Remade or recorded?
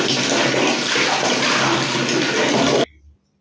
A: recorded